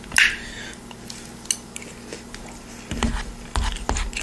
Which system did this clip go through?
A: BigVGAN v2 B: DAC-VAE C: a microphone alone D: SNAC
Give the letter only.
C